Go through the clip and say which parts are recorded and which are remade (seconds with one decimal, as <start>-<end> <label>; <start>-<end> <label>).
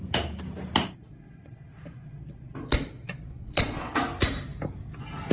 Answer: 0.0-0.8 recorded; 0.8-4.0 remade; 4.0-5.3 recorded